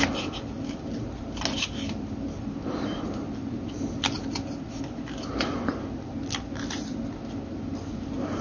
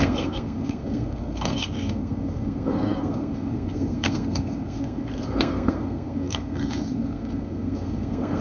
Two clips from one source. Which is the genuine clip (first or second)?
first